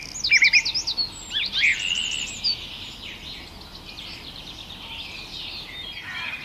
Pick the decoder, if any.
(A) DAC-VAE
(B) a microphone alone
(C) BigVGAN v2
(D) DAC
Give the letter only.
B